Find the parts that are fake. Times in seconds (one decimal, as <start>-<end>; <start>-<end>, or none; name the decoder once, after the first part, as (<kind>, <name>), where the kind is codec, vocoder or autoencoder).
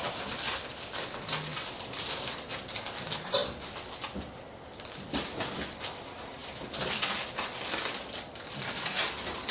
none